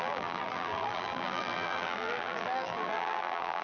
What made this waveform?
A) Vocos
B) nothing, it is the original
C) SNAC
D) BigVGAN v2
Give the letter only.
D